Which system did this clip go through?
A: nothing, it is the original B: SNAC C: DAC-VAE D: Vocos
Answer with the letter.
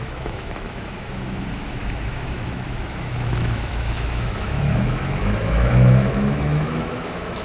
C